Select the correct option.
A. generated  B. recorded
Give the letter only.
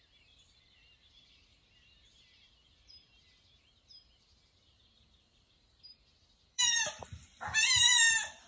A